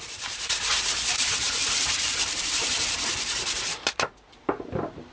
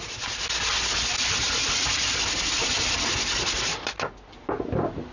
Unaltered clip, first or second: second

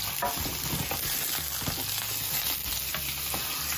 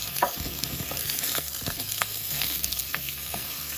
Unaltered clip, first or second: first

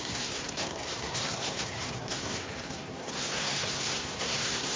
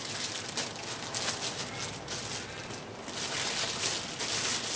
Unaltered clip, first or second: second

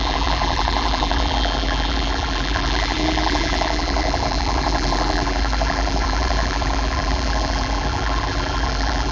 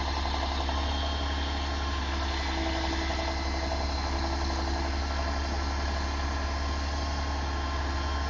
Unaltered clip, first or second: second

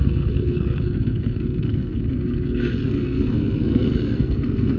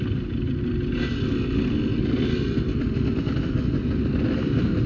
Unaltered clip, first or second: second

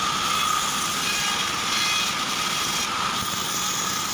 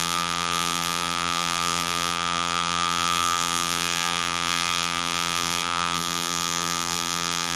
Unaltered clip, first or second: first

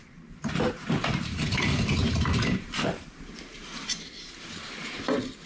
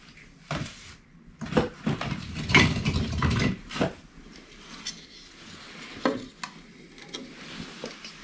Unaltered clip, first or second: second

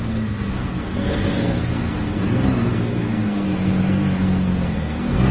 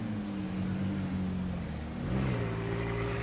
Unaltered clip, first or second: second